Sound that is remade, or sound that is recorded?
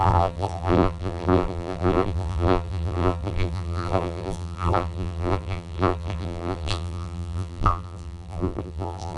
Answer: remade